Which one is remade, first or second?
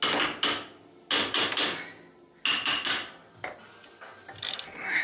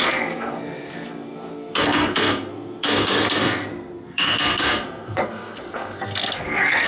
second